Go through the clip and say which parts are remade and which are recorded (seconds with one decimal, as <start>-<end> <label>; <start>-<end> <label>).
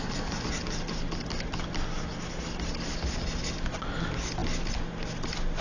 0.0-5.6 recorded